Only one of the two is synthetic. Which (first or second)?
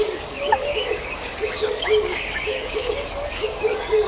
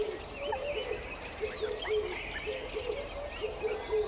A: first